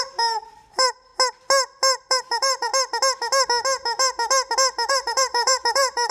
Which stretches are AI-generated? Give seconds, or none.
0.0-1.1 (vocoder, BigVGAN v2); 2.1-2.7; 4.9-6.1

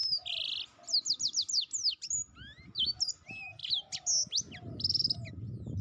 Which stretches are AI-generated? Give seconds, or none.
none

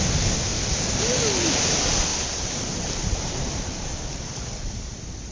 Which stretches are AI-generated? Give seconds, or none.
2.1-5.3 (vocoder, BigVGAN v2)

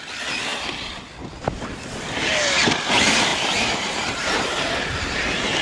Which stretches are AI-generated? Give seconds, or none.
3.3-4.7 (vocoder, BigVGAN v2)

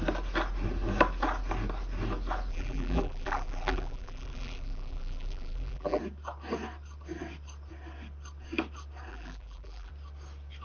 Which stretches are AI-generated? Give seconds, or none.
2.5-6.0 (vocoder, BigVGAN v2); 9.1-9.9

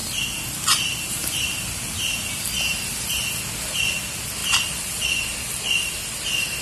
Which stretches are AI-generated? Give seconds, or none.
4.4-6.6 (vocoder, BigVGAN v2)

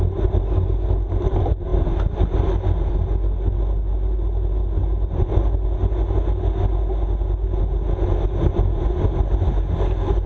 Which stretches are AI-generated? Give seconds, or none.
none

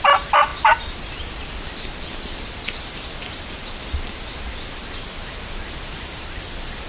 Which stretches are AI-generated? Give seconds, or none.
none